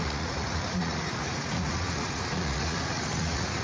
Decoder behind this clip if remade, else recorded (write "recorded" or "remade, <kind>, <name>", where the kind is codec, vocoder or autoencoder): remade, vocoder, Vocos